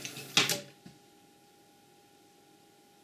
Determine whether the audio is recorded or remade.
recorded